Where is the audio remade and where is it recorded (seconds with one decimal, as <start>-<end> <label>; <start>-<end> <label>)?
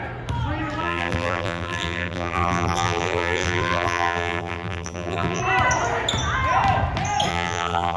0.0-0.8 recorded; 0.8-5.4 remade; 5.4-7.3 recorded; 7.3-8.0 remade